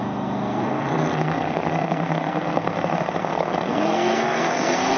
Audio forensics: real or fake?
fake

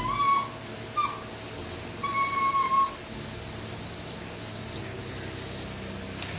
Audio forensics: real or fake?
real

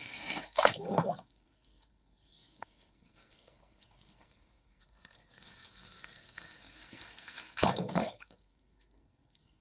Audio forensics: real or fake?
fake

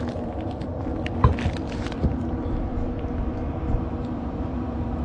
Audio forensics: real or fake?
fake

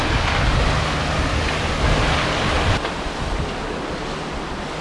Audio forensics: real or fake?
real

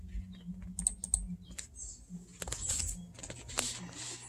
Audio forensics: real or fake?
real